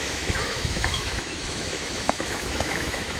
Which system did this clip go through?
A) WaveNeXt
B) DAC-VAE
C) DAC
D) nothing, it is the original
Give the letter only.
B